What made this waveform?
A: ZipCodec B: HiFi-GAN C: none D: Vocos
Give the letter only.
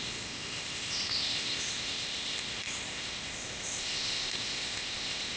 A